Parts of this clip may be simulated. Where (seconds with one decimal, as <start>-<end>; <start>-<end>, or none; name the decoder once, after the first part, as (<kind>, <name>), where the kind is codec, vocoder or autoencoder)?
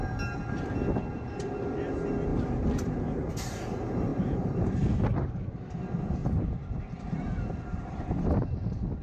2.3-3.3 (vocoder, BigVGAN v2); 4.1-5.0; 6.2-6.8; 7.7-8.2